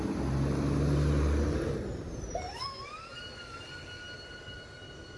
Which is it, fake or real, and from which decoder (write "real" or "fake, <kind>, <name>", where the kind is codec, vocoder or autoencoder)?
real